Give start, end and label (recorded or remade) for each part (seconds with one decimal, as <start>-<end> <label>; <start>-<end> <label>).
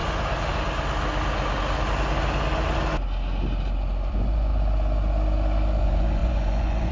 0.0-4.1 recorded; 4.1-4.5 remade; 4.5-5.8 recorded; 5.8-6.9 remade